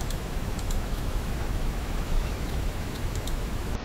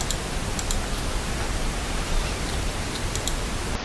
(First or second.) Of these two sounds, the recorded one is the second